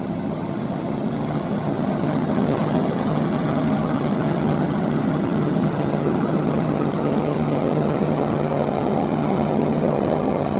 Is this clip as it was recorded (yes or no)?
no